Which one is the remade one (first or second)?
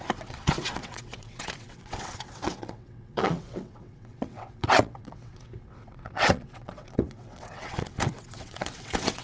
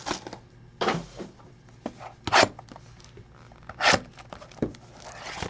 first